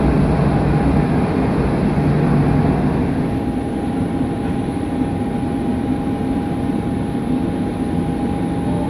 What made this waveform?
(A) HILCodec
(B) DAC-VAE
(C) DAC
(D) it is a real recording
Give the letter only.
D